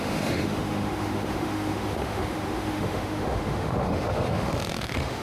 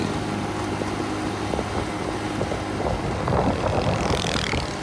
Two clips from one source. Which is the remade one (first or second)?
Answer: first